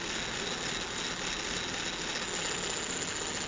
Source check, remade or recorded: recorded